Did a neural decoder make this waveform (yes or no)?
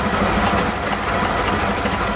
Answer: no